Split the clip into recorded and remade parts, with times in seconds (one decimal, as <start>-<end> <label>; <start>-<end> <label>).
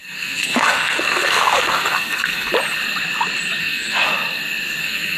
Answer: 0.0-2.5 remade; 2.5-3.6 recorded; 3.6-4.1 remade; 4.1-4.8 recorded; 4.8-5.2 remade